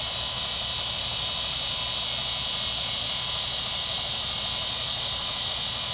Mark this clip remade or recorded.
recorded